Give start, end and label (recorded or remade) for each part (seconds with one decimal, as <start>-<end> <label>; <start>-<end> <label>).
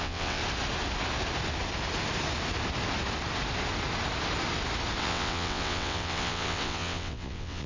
0.0-0.4 remade; 0.4-5.0 recorded; 5.0-7.7 remade